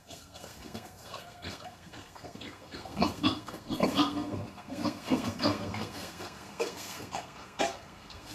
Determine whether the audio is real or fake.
fake